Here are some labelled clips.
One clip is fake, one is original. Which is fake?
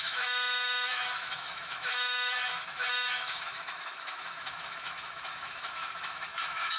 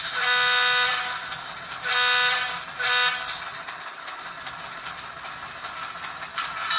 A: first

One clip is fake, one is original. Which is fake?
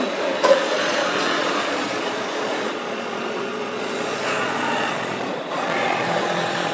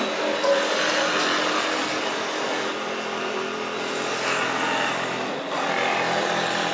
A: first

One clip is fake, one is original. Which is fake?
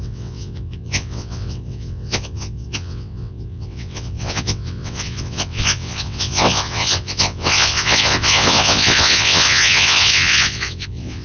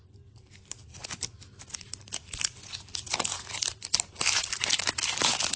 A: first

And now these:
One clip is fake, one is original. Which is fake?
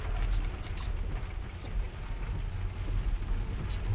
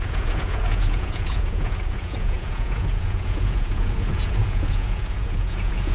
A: second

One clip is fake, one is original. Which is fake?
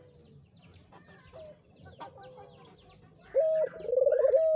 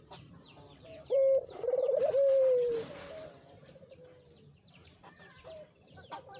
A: second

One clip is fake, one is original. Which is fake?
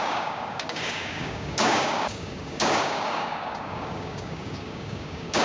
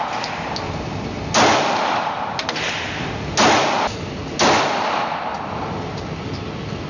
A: first